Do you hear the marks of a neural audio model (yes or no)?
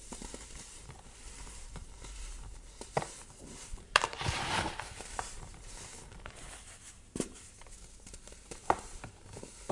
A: yes